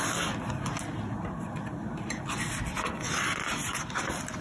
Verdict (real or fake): real